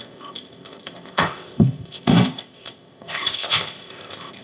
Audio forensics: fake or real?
fake